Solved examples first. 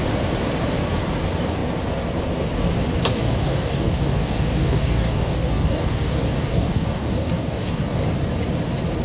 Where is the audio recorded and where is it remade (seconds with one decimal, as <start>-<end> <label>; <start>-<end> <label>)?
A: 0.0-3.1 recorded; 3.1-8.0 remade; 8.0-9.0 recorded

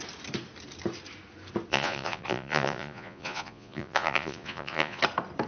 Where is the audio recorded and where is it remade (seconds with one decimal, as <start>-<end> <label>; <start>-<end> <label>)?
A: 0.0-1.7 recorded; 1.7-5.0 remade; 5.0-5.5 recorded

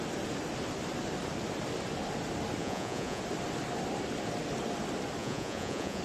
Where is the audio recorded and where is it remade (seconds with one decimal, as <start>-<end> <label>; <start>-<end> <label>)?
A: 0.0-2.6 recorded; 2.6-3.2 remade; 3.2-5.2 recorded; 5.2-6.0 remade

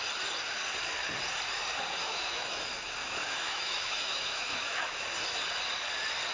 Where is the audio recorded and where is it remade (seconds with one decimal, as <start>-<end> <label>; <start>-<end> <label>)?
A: 0.0-2.0 recorded; 2.0-5.0 remade; 5.0-6.3 recorded

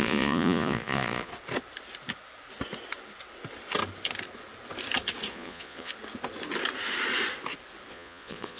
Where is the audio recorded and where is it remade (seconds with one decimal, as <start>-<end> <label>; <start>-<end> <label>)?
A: 0.0-1.3 remade; 1.3-5.3 recorded; 5.3-5.9 remade; 5.9-7.9 recorded; 7.9-8.6 remade

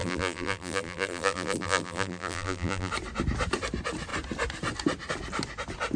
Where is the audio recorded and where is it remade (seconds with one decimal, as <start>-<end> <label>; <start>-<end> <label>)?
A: 0.0-2.9 remade; 2.9-6.0 recorded